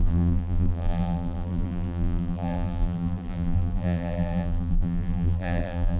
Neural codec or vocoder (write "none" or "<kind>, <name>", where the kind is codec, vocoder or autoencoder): vocoder, BigVGAN v2